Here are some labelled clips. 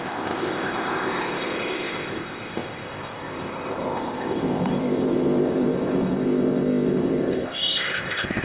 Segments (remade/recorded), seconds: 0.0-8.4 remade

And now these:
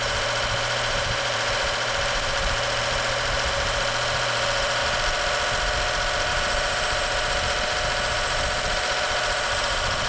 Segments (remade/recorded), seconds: 0.0-4.8 remade; 4.8-6.3 recorded; 6.3-10.1 remade